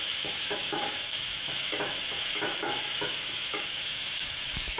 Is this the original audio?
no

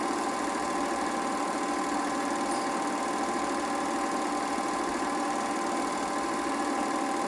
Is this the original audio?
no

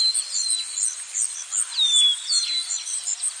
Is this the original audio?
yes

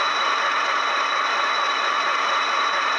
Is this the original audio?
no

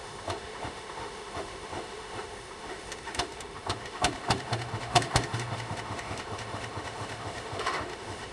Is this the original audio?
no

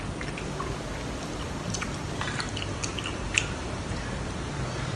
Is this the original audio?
yes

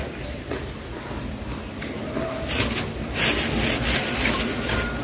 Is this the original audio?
yes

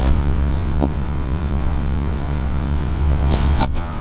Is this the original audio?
no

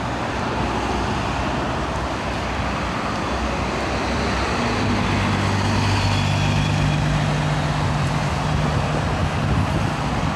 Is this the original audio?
yes